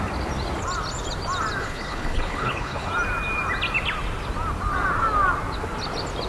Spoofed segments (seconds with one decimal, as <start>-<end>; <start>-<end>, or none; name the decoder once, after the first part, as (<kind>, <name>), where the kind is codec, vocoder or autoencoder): 1.6-2.9 (codec, HILCodec)